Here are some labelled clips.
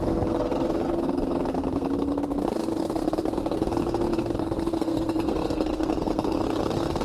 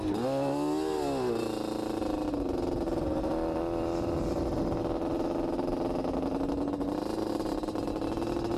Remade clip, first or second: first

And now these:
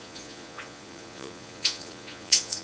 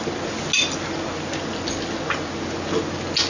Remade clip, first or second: first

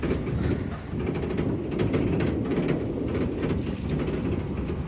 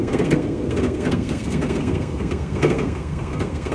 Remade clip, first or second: second